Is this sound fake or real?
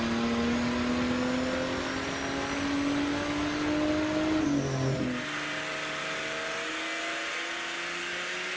real